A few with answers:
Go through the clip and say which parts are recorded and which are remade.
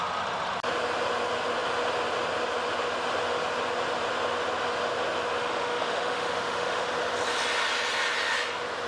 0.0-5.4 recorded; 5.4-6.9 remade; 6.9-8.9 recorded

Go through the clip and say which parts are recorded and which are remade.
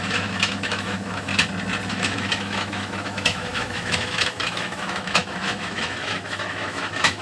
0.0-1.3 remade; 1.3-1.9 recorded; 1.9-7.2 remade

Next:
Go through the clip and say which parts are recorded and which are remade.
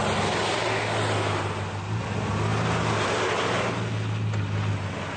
0.0-5.2 recorded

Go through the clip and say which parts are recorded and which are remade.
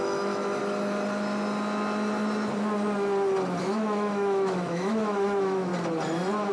0.0-0.6 remade; 0.6-3.6 recorded; 3.6-5.7 remade; 5.7-6.5 recorded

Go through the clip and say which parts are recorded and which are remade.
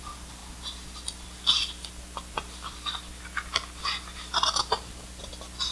0.0-5.7 recorded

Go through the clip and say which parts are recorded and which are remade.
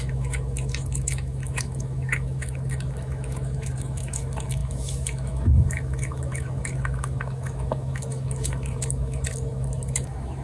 0.0-10.4 remade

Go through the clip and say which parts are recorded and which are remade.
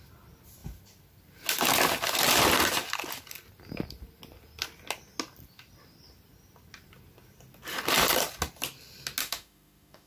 0.0-9.2 recorded; 9.2-10.1 remade